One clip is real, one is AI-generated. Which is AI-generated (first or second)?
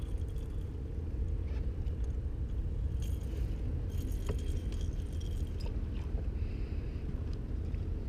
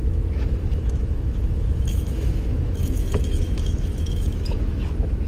second